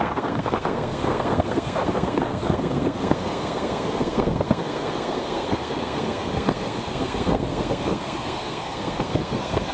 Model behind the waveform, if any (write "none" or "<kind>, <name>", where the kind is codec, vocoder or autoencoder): codec, SNAC